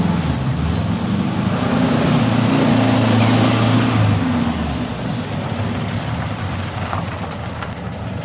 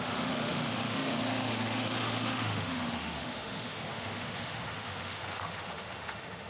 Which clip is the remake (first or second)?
second